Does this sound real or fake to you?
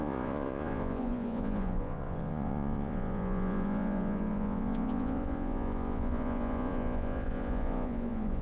fake